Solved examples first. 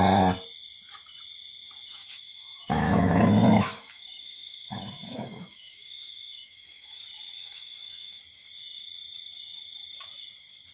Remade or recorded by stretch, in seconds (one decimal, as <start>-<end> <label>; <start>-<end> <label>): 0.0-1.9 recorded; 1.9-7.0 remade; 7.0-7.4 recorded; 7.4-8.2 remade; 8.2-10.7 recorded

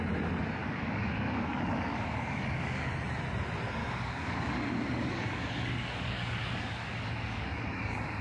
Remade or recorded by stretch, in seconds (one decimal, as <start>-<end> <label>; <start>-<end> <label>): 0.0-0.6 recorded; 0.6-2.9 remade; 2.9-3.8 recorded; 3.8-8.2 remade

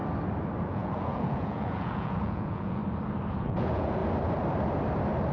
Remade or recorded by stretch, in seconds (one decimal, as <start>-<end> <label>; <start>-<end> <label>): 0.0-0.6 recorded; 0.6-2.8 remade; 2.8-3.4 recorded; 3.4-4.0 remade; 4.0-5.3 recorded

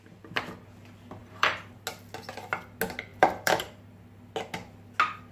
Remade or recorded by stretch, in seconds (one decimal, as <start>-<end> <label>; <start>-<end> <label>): 0.0-1.2 recorded; 1.2-1.7 remade; 1.7-3.1 recorded; 3.1-3.9 remade; 3.9-5.3 recorded

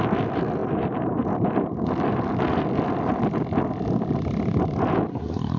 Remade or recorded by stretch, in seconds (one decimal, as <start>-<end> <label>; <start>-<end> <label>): 0.0-5.1 recorded; 5.1-5.6 remade

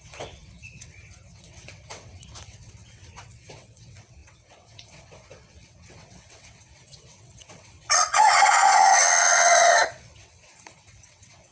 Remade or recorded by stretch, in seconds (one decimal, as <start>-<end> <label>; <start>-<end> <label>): 0.0-11.5 remade

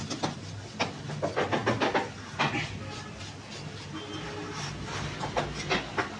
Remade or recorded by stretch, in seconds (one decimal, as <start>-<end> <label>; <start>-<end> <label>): 0.0-6.2 recorded

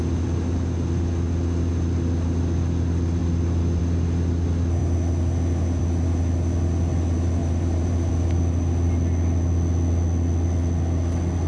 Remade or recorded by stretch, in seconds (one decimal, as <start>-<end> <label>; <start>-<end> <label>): 0.0-7.4 recorded; 7.4-8.1 remade; 8.1-11.5 recorded